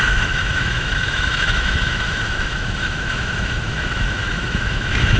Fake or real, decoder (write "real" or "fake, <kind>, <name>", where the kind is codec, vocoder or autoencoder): fake, autoencoder, DAC-VAE